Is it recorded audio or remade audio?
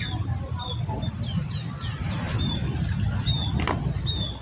recorded